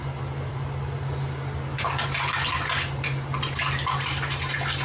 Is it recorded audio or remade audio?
recorded